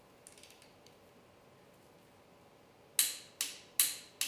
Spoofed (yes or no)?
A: no